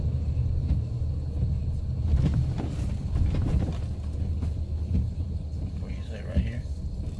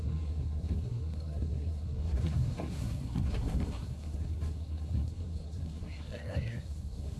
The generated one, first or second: second